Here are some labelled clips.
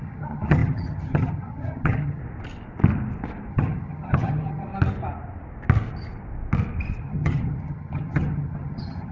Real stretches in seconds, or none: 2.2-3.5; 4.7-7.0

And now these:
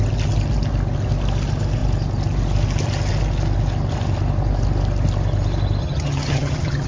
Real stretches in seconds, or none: 0.0-5.8

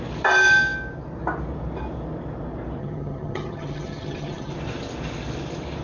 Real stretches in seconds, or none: 0.0-2.8; 4.5-5.8

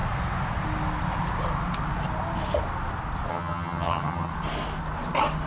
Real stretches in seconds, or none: 0.0-3.3; 4.3-5.5

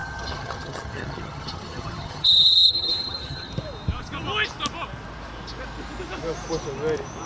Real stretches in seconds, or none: 3.5-7.3